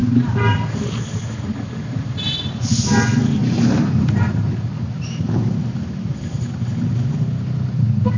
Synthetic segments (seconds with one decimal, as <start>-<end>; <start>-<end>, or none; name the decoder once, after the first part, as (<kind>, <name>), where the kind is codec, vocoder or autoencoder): 0.0-0.7 (vocoder, BigVGAN v2); 3.4-6.7